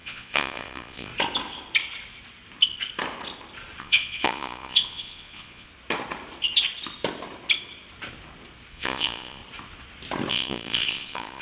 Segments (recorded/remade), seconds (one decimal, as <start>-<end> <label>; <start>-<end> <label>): 0.0-1.1 remade; 1.1-3.8 recorded; 3.8-5.7 remade; 5.7-8.7 recorded; 8.7-9.4 remade; 9.4-10.3 recorded; 10.3-11.4 remade